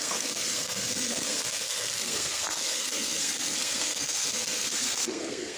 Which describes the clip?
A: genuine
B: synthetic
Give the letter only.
B